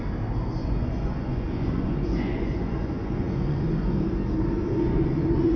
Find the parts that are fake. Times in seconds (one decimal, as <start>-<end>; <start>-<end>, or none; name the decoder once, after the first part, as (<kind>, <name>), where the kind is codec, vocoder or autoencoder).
0.6-4.0 (vocoder, Vocos); 4.7-5.6

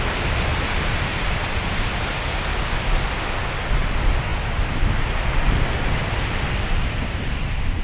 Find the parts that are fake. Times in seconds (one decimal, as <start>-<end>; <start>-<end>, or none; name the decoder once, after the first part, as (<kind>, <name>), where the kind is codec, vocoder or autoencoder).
none